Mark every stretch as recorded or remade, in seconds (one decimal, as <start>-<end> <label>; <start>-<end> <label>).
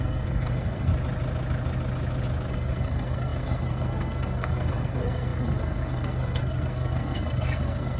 0.0-0.9 remade; 0.9-2.5 recorded; 2.5-8.0 remade